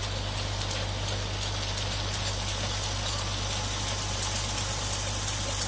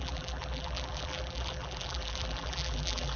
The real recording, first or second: first